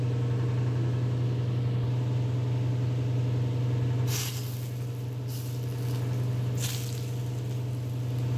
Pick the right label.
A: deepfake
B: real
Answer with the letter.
B